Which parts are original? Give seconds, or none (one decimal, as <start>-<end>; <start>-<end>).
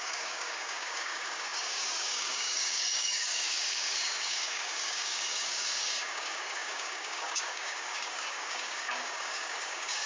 none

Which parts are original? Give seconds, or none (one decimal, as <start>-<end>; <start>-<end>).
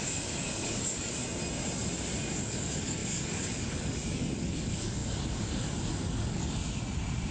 1.2-2.4; 6.6-7.3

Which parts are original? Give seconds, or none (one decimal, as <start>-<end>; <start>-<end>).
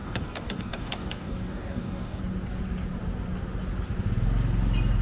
2.2-5.0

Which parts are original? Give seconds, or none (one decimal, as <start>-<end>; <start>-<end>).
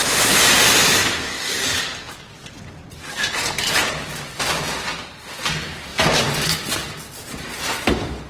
0.0-1.2; 2.2-8.3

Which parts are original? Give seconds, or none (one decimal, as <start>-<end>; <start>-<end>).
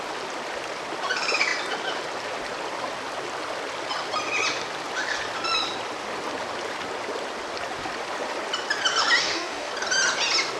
0.0-9.2; 9.7-10.6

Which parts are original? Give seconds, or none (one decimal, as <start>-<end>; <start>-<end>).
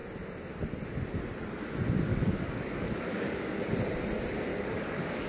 0.0-2.1; 3.6-4.5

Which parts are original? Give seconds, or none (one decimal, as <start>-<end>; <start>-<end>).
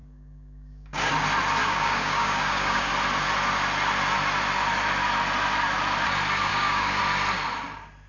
1.1-1.6; 2.9-6.5; 7.0-8.1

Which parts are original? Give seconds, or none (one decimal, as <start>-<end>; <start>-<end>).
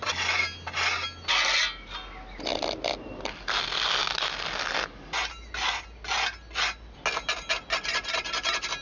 0.0-8.8